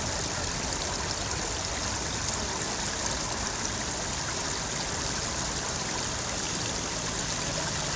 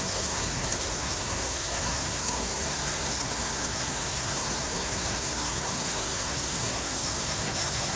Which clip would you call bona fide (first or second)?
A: first